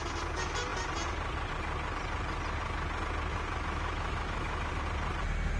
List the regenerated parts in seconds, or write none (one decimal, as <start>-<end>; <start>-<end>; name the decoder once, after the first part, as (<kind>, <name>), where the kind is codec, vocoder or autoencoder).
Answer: 3.3-4.7 (autoencoder, DAC-VAE)